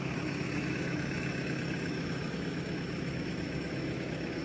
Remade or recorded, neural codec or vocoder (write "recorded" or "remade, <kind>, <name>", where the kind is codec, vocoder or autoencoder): remade, autoencoder, DAC-VAE